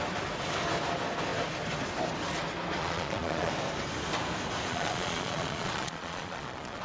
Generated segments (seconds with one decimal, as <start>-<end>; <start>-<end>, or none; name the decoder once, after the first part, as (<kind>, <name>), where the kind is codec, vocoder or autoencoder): 2.8-3.5 (vocoder, Vocos); 4.7-6.8

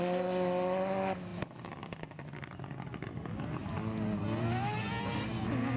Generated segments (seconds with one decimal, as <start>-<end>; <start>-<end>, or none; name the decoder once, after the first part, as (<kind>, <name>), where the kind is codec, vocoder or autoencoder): none

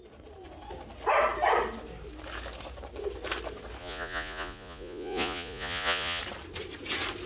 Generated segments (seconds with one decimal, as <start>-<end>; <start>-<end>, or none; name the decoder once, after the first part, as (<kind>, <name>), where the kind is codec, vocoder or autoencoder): 3.8-6.2 (vocoder, Vocos)

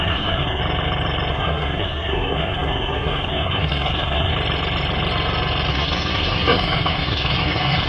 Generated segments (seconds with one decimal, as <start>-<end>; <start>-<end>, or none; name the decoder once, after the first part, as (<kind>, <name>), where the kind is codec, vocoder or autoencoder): 0.0-0.6 (codec, SNAC); 1.3-4.3; 5.7-7.9

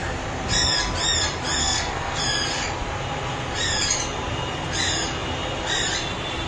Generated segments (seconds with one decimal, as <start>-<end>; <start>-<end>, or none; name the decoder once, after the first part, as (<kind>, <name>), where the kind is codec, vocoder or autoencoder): 1.6-2.2 (codec, SNAC)

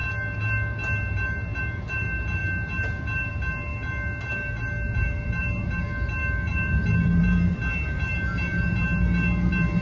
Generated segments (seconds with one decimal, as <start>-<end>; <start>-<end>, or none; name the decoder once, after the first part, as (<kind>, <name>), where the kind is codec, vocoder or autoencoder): 6.5-7.2 (vocoder, BigVGAN v2)

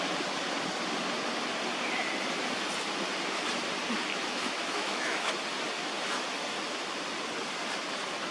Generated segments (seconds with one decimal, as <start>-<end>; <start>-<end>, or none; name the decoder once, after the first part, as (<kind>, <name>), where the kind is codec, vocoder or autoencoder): 4.1-5.3 (autoencoder, DAC-VAE)